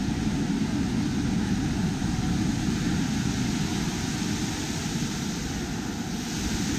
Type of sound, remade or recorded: recorded